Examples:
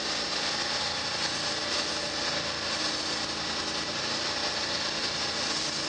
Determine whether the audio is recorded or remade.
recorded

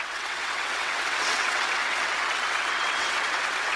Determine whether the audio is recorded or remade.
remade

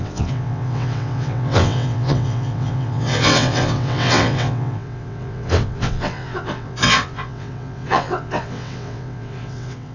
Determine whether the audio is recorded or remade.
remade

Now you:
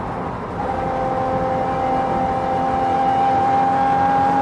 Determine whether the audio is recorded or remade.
recorded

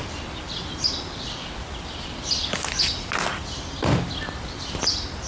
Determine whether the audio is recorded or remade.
recorded